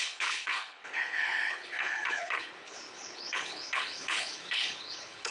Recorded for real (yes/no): no